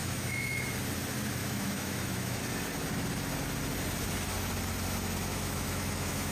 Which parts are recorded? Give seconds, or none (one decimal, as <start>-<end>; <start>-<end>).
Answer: 0.6-1.4; 2.4-5.3